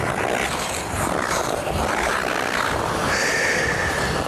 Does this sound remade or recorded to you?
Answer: recorded